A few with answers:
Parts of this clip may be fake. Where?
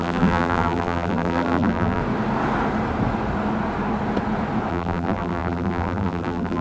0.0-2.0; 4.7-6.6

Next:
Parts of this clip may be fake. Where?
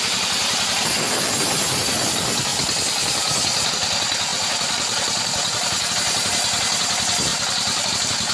4.3-5.9; 7.3-7.9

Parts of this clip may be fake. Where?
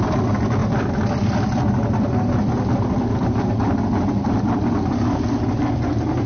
none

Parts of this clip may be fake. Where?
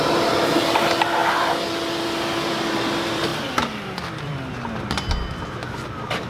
0.0-6.3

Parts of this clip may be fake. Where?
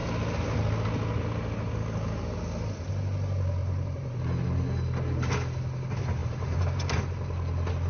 3.6-4.2; 6.2-7.0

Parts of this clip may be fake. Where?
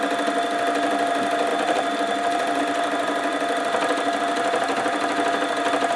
1.5-2.6